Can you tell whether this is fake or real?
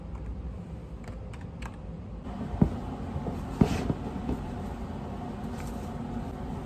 real